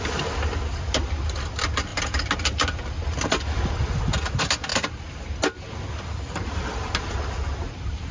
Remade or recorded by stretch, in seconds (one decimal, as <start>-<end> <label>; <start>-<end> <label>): 0.0-8.1 recorded